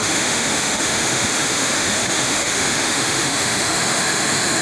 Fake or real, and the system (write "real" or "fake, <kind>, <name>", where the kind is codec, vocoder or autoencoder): fake, autoencoder, DAC-VAE